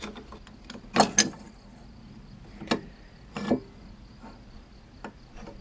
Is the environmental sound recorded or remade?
recorded